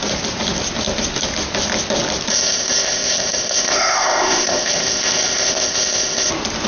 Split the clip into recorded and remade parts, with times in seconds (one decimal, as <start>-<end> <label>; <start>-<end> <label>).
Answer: 0.0-2.3 recorded; 2.3-6.3 remade; 6.3-6.7 recorded